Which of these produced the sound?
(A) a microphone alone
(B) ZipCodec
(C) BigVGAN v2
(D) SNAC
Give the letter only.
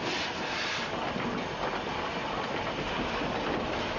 A